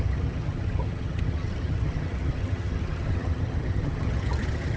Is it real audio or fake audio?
fake